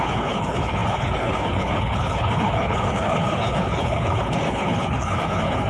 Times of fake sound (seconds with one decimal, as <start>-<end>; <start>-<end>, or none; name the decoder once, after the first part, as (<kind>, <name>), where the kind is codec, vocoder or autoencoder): 0.0-5.7 (codec, HILCodec)